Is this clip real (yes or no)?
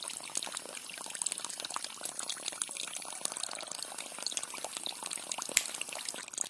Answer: yes